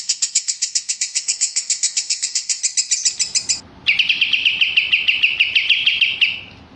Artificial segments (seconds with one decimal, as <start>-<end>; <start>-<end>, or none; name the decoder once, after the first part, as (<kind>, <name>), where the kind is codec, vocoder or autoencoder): 0.0-2.6 (codec, SNAC)